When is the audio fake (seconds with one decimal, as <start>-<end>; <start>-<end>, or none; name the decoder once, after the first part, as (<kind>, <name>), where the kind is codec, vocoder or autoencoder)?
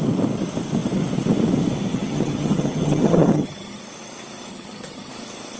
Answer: 1.9-3.8 (vocoder, HiFi-GAN); 4.5-5.1